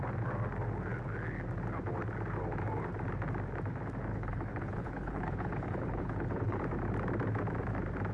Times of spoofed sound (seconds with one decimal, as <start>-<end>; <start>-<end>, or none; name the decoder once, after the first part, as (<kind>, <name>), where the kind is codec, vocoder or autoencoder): 4.1-6.6 (codec, HILCodec)